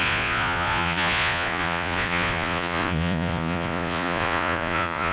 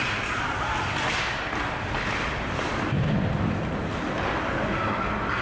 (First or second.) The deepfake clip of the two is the first